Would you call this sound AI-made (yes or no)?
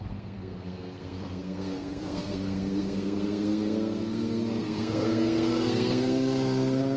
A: yes